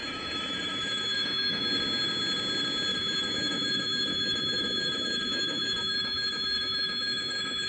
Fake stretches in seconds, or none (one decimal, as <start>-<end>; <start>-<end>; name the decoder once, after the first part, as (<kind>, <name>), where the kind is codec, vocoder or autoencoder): 0.0-1.6 (autoencoder, DAC-VAE); 2.9-7.7